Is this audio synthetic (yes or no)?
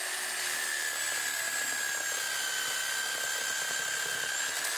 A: no